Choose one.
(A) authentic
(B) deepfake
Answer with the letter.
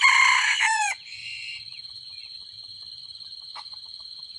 B